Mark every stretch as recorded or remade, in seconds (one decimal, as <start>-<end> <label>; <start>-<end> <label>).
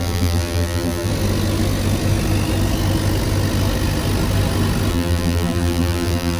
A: 0.0-1.1 remade; 1.1-4.9 recorded; 4.9-6.4 remade